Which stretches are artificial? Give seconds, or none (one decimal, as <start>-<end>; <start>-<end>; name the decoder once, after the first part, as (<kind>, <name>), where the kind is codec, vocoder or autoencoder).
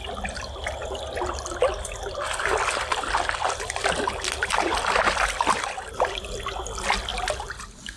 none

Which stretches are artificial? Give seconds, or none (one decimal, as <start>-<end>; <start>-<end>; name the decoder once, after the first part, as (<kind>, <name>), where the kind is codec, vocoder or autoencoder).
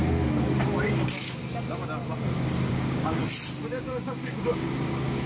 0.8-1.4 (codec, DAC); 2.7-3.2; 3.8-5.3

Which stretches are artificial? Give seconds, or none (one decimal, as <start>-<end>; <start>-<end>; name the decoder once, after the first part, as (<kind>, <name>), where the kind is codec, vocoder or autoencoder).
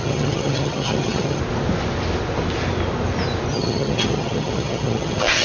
0.0-1.4 (vocoder, HiFi-GAN); 3.5-5.4